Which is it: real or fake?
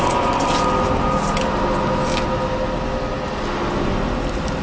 real